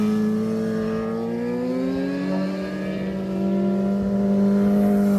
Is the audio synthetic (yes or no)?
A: no